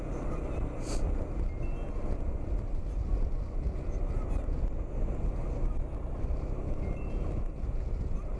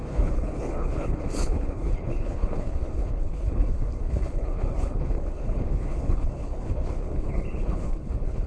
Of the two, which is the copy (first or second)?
second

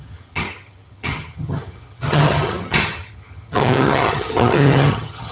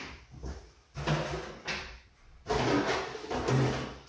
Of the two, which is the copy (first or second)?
first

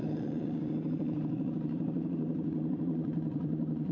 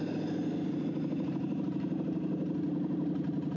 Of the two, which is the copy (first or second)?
first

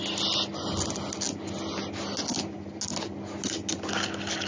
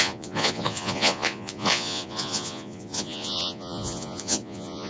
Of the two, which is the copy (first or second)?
second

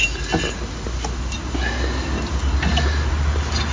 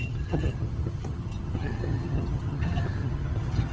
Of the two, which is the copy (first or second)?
second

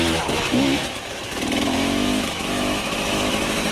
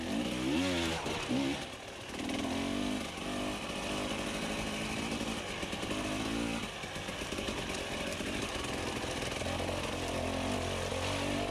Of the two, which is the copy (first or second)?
first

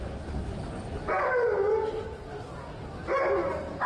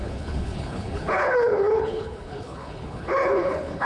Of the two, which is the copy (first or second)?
second